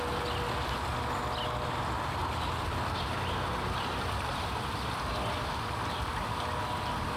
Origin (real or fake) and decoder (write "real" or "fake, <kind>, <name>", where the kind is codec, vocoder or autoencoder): real